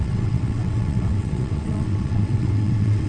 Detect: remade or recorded remade